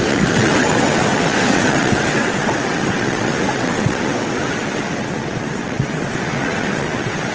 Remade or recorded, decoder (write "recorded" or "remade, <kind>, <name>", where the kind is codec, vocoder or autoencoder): remade, vocoder, WaveNeXt